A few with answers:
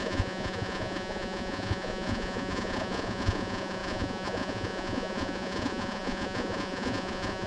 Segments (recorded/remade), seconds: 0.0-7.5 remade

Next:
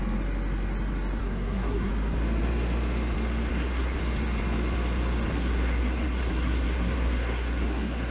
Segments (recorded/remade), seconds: 0.0-1.2 recorded; 1.2-1.9 remade; 1.9-3.5 recorded; 3.5-4.0 remade; 4.0-5.3 recorded; 5.3-8.1 remade

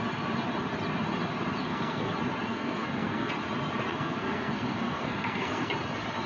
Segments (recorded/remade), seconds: 0.0-1.6 recorded; 1.6-2.1 remade; 2.1-2.5 recorded; 2.5-3.3 remade; 3.3-3.9 recorded; 3.9-5.7 remade; 5.7-6.3 recorded

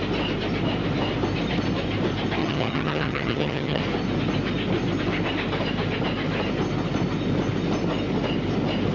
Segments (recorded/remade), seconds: 0.0-2.4 recorded; 2.4-3.8 remade; 3.8-8.9 recorded

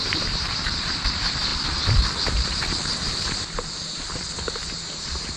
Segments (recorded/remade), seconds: 0.0-1.5 remade; 1.5-4.7 recorded; 4.7-5.4 remade